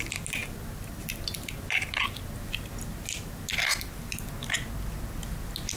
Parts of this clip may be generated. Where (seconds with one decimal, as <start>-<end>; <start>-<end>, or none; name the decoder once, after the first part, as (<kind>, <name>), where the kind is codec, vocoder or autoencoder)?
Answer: none